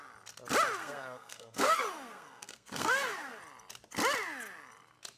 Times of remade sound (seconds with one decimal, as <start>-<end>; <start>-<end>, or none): 0.8-3.4